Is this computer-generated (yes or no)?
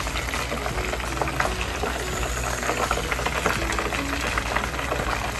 no